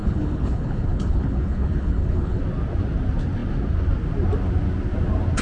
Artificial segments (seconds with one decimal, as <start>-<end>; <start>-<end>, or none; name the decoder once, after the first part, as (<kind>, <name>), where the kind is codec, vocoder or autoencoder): 0.0-2.4 (codec, HILCodec)